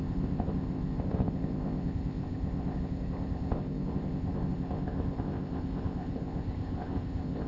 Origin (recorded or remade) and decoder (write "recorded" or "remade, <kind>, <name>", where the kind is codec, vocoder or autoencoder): remade, codec, ZipCodec